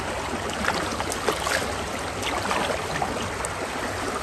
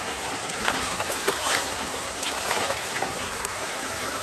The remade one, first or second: second